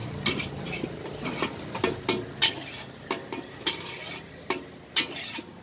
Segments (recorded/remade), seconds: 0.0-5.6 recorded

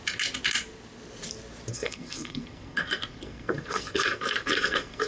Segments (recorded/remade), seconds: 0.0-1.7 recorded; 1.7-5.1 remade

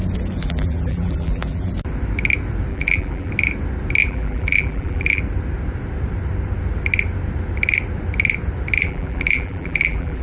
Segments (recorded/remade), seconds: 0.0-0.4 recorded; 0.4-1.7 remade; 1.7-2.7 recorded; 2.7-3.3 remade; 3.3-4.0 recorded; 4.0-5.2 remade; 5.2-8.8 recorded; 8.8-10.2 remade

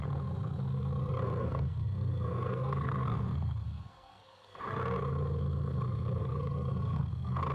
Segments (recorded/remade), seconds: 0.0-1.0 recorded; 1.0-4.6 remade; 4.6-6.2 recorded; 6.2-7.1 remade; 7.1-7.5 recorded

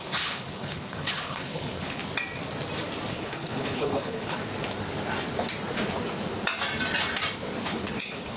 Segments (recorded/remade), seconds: 0.0-2.0 remade; 2.0-3.1 recorded; 3.1-4.4 remade; 4.4-7.6 recorded; 7.6-8.4 remade

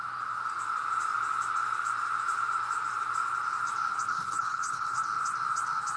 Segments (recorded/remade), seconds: 0.0-4.1 recorded; 4.1-5.0 remade; 5.0-6.0 recorded

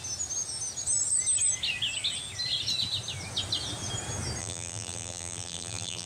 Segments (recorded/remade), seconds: 0.0-4.4 recorded; 4.4-6.1 remade